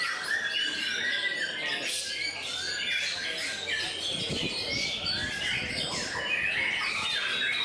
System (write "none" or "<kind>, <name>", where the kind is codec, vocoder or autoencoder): none